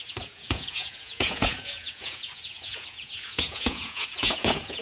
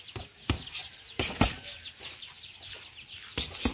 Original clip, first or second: second